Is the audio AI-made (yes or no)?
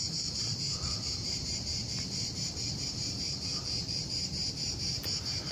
yes